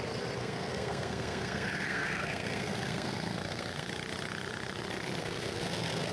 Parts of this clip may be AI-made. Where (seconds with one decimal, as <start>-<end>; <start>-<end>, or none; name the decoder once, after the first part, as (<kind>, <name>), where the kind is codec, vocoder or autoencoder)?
0.4-3.9 (codec, SNAC); 5.2-6.1